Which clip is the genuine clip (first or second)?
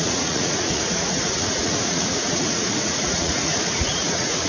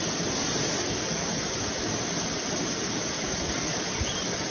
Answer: second